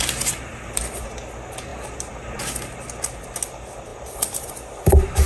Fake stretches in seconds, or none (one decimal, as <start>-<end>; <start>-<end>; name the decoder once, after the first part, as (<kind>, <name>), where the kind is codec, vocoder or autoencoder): none